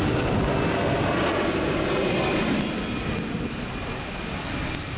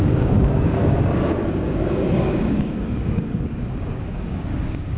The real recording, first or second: first